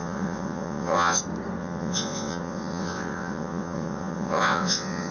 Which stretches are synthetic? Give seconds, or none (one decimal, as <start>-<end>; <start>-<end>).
0.0-1.2; 1.6-5.1